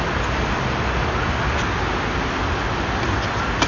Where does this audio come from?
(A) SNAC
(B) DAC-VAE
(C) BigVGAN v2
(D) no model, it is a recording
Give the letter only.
D